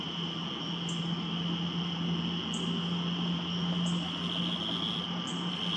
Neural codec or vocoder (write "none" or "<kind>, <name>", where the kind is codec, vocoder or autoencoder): none